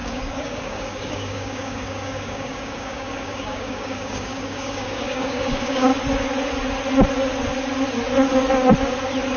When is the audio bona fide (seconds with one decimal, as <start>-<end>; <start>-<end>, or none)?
5.9-9.4